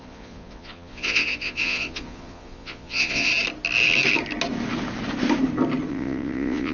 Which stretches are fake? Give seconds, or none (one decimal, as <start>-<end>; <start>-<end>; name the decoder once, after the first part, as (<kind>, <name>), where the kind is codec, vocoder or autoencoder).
0.0-3.3 (vocoder, Vocos); 5.9-6.7